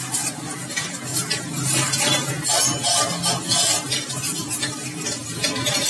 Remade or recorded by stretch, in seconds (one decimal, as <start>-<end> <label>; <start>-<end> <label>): 0.0-5.9 recorded